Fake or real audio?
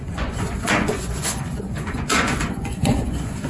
fake